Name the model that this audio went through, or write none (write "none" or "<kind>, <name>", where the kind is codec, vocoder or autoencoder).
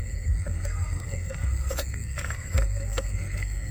codec, SNAC